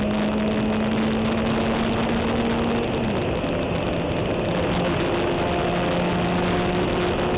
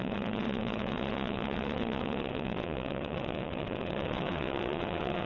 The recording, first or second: first